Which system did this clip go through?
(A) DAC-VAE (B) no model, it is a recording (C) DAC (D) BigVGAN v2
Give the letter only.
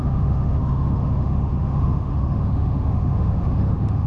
A